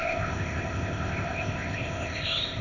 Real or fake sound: fake